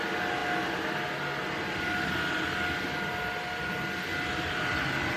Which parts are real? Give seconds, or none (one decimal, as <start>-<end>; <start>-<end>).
0.0-5.2